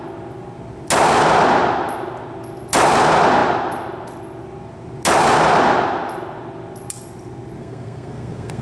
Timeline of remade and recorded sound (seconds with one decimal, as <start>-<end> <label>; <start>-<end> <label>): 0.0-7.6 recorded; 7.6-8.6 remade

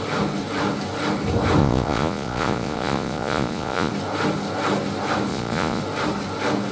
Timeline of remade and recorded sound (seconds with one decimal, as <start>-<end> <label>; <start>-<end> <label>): 0.0-1.6 recorded; 1.6-3.9 remade; 3.9-5.3 recorded; 5.3-5.8 remade; 5.8-6.7 recorded

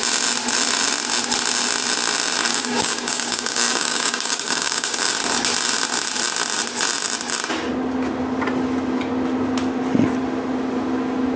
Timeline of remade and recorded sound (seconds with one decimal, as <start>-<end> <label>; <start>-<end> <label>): 0.0-2.5 recorded; 2.5-5.1 remade; 5.1-11.4 recorded

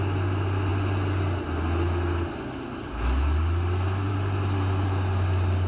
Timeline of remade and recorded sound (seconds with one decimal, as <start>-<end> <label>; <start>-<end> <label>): 0.0-5.7 recorded

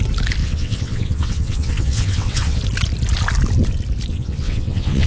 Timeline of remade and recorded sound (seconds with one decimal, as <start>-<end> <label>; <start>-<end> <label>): 0.0-0.4 recorded; 0.4-2.6 remade; 2.6-4.1 recorded; 4.1-5.1 remade